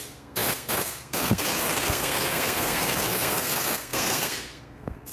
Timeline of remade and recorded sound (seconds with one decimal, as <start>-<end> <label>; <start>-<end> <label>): 0.0-5.1 remade